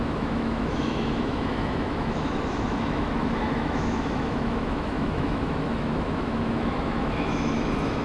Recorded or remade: remade